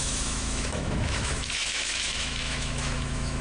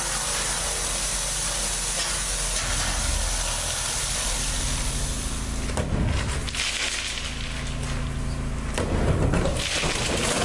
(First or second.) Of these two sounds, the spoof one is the first